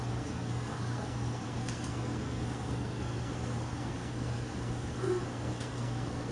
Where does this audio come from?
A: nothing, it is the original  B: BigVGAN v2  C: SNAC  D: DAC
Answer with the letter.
C